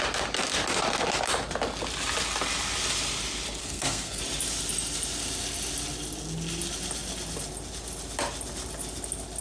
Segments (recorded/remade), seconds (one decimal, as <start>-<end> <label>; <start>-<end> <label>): 0.0-3.6 recorded; 3.6-4.2 remade; 4.2-9.4 recorded